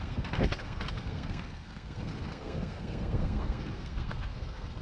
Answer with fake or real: fake